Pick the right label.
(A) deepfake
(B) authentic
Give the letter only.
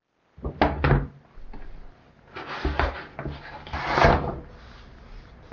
B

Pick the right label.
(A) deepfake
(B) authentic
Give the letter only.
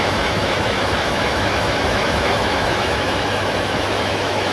A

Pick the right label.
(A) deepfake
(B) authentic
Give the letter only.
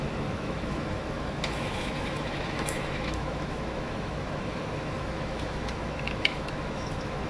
A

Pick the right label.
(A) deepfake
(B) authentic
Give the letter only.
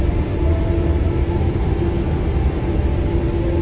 B